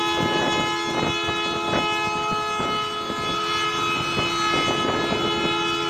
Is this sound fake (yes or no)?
no